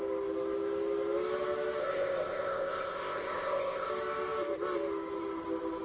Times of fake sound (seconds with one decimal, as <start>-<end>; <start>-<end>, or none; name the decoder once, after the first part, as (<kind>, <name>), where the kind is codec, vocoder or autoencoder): 1.8-3.9 (codec, ZipCodec)